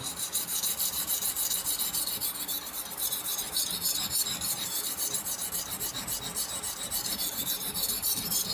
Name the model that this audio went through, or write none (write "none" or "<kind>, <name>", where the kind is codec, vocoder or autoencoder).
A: vocoder, BigVGAN v2